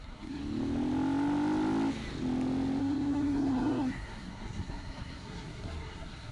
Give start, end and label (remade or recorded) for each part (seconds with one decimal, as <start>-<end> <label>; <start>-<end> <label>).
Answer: 0.0-0.4 remade; 0.4-2.8 recorded; 2.8-6.3 remade